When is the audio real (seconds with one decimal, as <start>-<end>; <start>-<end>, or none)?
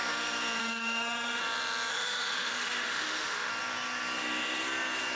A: 0.0-0.6; 1.4-1.9; 3.5-5.2